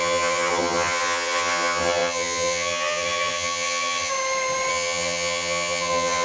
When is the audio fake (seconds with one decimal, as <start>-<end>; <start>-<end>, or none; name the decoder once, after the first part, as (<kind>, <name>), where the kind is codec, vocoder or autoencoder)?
0.0-4.1 (vocoder, HiFi-GAN); 4.7-6.2